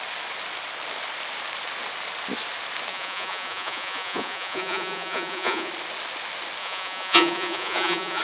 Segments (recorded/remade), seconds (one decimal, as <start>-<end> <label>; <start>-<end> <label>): 0.0-2.9 recorded; 2.9-5.7 remade; 5.7-6.6 recorded; 6.6-8.2 remade